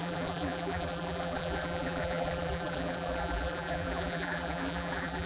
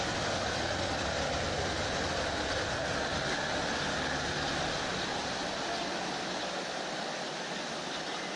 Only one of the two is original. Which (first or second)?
second